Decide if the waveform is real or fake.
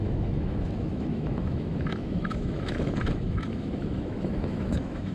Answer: fake